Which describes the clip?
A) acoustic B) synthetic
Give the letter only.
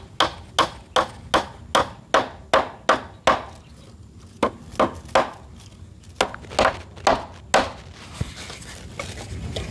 A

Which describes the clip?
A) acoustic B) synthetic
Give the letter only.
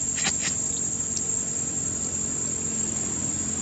A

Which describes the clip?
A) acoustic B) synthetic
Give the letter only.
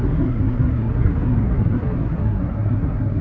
B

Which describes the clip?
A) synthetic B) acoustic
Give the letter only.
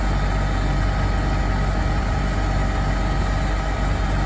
B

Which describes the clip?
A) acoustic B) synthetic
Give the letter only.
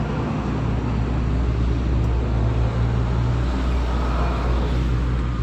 A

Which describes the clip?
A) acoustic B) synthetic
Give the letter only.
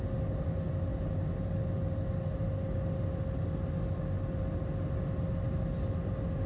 A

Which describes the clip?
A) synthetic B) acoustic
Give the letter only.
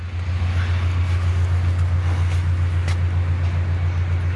B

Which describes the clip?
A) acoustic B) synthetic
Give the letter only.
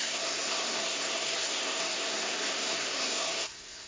B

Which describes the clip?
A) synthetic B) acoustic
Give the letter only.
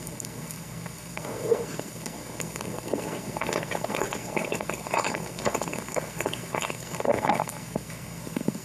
A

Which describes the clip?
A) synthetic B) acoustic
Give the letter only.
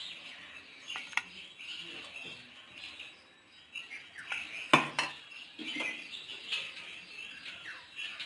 B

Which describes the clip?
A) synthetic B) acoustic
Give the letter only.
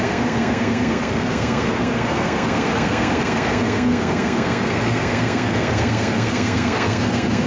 A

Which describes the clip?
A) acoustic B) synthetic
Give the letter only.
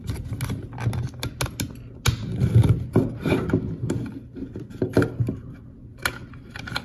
A